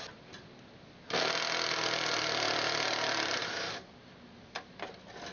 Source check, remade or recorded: recorded